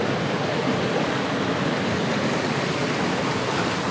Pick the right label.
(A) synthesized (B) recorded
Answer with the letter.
B